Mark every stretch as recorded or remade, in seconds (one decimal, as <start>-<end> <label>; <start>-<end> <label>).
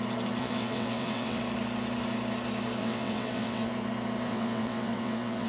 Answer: 0.0-0.4 recorded; 0.4-1.4 remade; 1.4-2.8 recorded; 2.8-3.7 remade; 3.7-4.3 recorded; 4.3-5.5 remade